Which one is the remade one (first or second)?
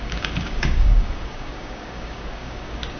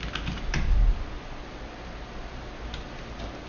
first